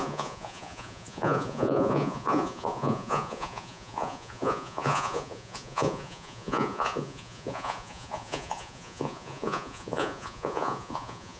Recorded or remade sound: remade